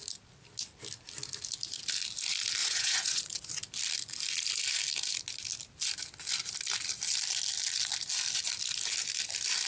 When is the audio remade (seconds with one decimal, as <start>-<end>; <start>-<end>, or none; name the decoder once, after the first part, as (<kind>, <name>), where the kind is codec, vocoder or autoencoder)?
2.6-3.4 (vocoder, Vocos)